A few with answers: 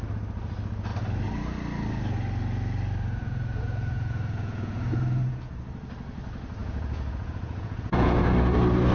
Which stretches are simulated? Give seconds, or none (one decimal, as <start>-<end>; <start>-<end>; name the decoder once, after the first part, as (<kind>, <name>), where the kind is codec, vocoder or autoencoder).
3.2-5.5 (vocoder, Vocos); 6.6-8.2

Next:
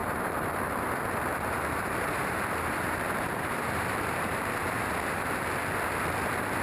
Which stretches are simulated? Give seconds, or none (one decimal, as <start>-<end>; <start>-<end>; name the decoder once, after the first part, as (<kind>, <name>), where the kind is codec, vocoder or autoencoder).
0.0-0.6 (vocoder, BigVGAN v2); 1.3-5.3

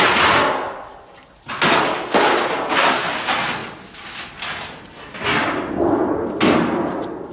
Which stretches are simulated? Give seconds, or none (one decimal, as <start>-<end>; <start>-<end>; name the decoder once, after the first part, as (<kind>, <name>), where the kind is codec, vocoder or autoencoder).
none